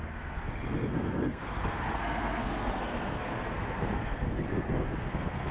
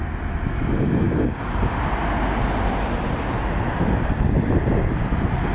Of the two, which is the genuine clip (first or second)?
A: second